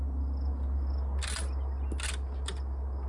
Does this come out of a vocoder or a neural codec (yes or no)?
no